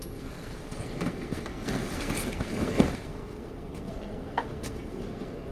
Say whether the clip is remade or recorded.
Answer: remade